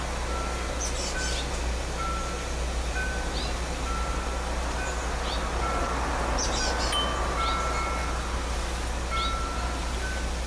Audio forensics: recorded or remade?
recorded